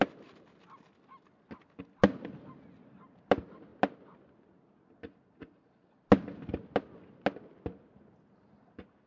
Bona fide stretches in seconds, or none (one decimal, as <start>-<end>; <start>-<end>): 0.0-9.1